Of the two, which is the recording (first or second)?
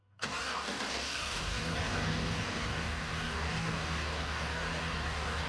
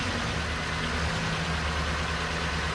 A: second